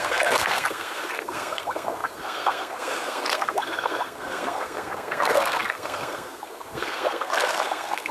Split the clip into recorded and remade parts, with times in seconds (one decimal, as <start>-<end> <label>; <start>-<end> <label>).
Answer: 0.0-8.1 remade